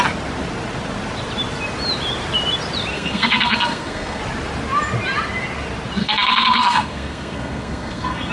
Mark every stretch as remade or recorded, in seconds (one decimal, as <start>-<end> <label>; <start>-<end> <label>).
0.0-2.9 recorded; 2.9-4.2 remade; 4.2-6.0 recorded; 6.0-8.3 remade